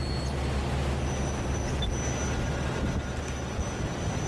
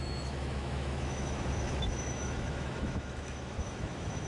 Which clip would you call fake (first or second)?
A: second